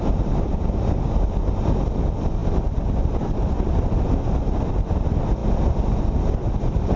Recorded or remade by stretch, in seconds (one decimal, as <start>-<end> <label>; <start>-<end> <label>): 0.0-7.0 recorded

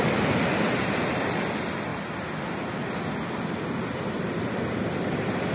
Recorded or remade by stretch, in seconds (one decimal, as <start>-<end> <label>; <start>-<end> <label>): 0.0-5.5 recorded

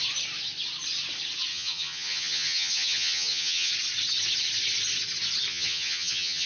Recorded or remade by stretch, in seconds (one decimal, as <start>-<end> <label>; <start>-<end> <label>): 0.0-1.5 recorded; 1.5-3.7 remade; 3.7-5.5 recorded; 5.5-6.5 remade

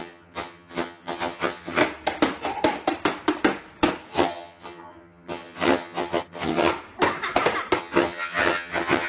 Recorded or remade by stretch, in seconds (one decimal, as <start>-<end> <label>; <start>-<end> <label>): 0.0-1.8 remade; 1.8-4.1 recorded; 4.1-6.7 remade; 6.7-7.8 recorded; 7.8-9.1 remade

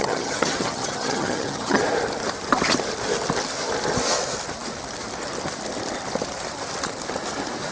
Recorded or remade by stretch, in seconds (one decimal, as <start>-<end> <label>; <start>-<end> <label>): 0.0-1.8 remade; 1.8-7.7 recorded